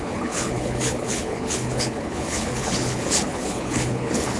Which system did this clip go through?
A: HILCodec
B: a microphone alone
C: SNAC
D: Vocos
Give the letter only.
A